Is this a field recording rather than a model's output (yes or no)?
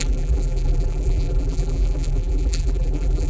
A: no